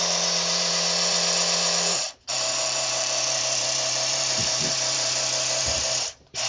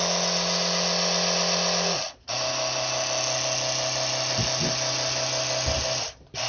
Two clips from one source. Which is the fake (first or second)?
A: first